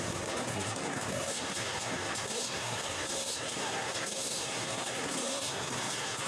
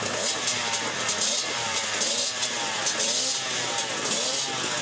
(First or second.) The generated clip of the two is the first